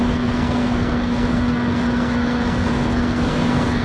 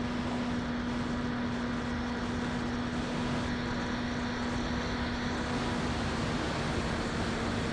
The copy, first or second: first